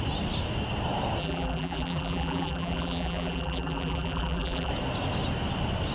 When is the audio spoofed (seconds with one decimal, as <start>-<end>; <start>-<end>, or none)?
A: 1.2-4.7